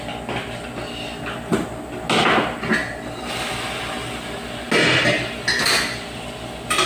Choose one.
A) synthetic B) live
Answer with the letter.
B